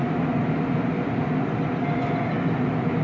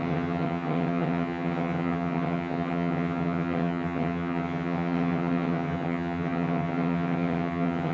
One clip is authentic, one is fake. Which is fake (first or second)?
second